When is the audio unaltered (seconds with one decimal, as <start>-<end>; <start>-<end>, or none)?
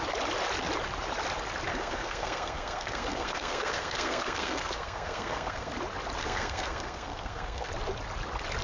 0.0-1.7; 5.7-6.2; 7.7-8.6